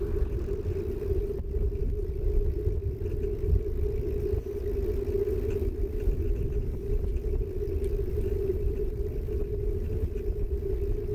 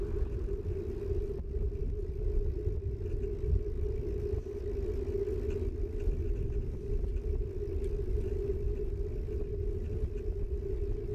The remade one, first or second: first